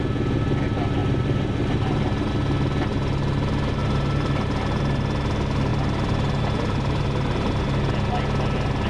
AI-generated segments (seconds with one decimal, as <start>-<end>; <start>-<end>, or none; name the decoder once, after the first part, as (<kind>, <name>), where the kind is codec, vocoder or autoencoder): 1.0-2.3 (vocoder, BigVGAN v2); 3.8-4.8; 5.7-7.6